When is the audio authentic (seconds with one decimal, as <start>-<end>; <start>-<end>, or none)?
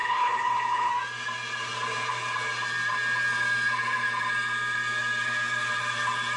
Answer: 0.9-6.4